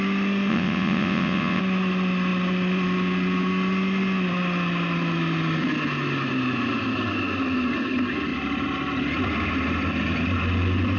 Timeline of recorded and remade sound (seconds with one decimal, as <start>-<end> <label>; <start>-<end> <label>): 0.0-0.5 recorded; 0.5-1.6 remade; 1.6-11.0 recorded